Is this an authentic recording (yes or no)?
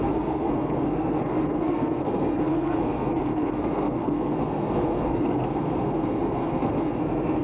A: no